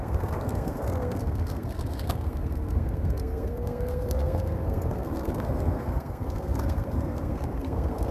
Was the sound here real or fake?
fake